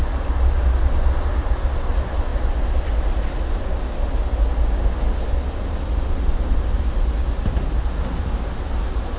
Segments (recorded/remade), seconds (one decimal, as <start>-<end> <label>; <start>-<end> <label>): 0.0-9.2 recorded